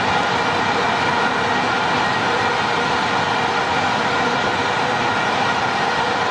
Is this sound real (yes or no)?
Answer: yes